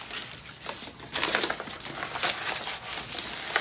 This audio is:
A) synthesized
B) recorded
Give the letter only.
B